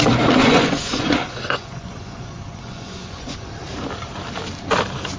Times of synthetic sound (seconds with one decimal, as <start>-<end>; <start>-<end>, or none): 0.4-3.5

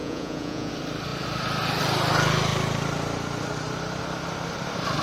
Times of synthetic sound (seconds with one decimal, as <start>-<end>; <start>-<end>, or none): 0.0-0.7

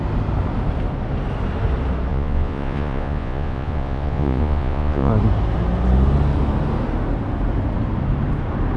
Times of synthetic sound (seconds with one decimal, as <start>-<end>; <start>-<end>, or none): 2.1-5.1

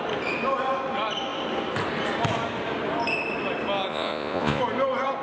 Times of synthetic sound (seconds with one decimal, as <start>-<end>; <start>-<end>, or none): 3.9-4.6

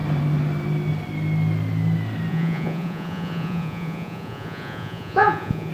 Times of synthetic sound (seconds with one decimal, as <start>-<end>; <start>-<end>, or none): 2.3-5.7

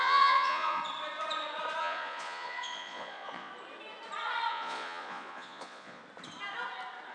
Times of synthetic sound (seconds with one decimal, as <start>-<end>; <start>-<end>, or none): 0.0-0.8; 1.8-3.5; 4.5-6.0

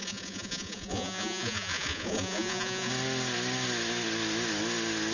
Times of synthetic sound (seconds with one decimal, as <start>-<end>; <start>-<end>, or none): 0.0-2.9

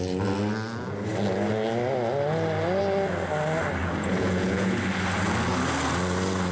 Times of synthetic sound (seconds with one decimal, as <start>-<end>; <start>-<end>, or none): 3.8-4.8